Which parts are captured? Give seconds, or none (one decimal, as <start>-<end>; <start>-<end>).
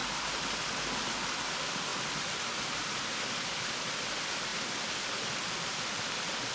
0.0-1.9; 3.1-6.5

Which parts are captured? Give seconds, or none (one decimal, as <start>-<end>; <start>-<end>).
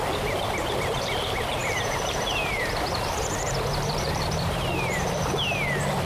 0.0-1.6; 5.3-6.1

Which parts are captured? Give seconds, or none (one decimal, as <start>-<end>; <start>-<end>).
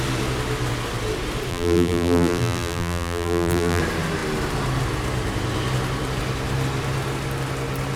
0.0-1.5; 3.8-8.0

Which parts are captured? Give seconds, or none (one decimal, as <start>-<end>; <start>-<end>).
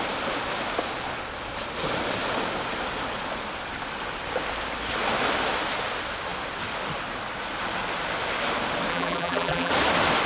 0.0-8.9; 9.7-10.3